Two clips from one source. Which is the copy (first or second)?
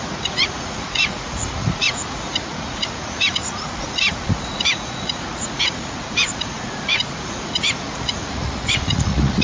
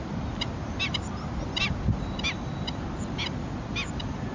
first